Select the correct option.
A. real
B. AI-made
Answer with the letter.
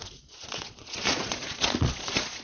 B